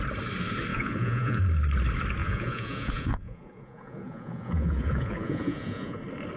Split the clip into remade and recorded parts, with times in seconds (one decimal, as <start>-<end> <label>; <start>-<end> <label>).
0.0-0.7 recorded; 0.7-1.4 remade; 1.4-2.2 recorded; 2.2-6.0 remade; 6.0-6.4 recorded